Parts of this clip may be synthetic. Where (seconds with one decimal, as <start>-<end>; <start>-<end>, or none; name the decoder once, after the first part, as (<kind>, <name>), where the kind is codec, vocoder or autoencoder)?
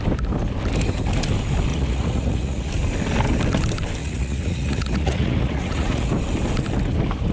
1.7-2.7 (vocoder, Vocos); 4.0-6.1